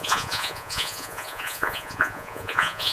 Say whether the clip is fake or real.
fake